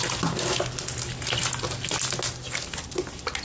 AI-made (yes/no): no